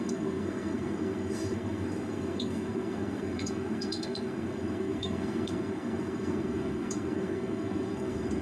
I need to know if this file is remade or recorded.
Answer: remade